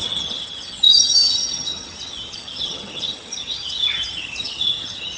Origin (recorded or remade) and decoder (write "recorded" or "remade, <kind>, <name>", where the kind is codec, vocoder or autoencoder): remade, vocoder, HiFi-GAN